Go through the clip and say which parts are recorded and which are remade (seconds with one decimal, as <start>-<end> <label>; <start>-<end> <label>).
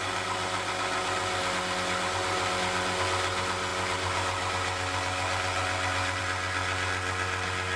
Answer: 0.0-7.8 recorded